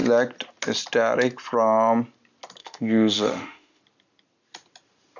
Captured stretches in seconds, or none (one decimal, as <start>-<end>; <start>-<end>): 0.0-2.6; 3.8-5.2